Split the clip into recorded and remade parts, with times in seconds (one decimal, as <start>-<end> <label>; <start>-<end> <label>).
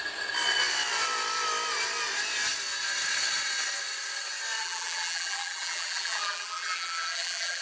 0.0-4.6 recorded; 4.6-7.6 remade